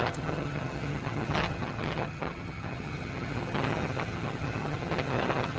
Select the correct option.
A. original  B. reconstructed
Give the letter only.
B